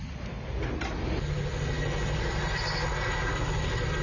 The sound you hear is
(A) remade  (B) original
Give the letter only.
B